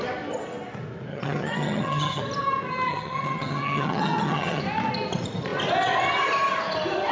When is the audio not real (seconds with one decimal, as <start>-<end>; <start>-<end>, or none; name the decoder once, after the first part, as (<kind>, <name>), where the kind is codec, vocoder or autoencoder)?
1.1-2.2 (vocoder, HiFi-GAN); 2.9-4.6

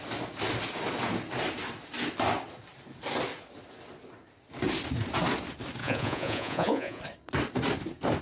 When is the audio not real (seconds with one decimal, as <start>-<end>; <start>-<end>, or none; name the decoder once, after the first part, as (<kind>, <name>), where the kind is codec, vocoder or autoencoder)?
5.8-7.0 (vocoder, Vocos)

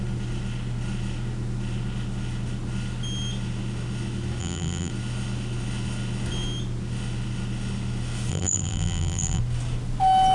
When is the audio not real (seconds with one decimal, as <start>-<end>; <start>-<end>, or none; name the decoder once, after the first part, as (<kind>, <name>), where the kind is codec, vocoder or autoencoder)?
4.4-4.9 (vocoder, BigVGAN v2); 8.3-9.4

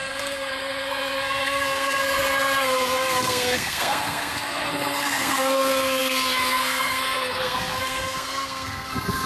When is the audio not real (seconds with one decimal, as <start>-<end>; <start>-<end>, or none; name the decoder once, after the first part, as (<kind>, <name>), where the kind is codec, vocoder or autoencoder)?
0.0-9.3 (codec, SNAC)

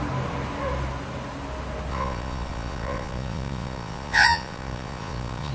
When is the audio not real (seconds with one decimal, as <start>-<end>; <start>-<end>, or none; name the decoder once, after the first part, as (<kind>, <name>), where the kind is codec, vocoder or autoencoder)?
1.9-5.5 (vocoder, Vocos)